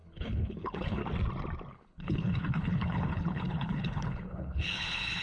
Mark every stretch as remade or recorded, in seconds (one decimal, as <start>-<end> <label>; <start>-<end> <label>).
0.0-1.0 remade; 1.0-1.7 recorded; 1.7-5.2 remade